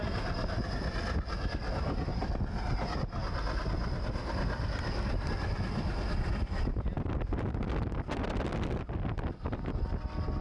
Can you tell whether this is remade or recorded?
recorded